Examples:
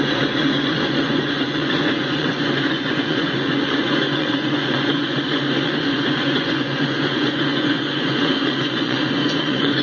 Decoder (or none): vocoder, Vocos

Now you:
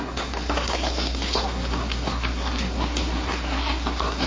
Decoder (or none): codec, SNAC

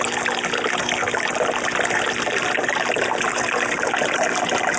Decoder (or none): none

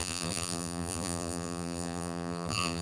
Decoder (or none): vocoder, BigVGAN v2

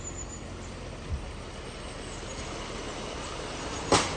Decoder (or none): none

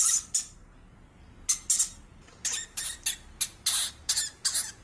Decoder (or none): none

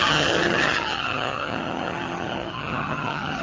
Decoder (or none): vocoder, HiFi-GAN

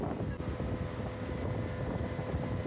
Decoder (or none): none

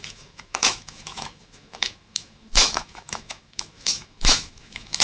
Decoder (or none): autoencoder, DAC-VAE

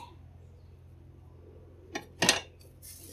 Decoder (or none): none